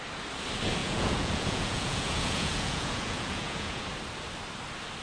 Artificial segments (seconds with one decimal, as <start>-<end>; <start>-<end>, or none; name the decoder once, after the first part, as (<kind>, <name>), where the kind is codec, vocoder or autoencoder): 0.8-3.8 (vocoder, Vocos)